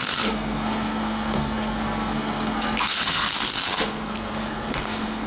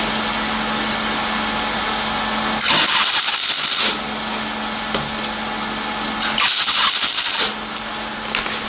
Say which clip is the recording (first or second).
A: second